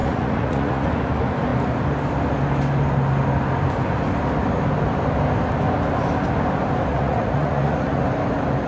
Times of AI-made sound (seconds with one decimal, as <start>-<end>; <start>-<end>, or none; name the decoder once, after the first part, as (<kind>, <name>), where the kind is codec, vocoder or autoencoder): 0.0-0.9 (vocoder, Vocos); 6.9-8.0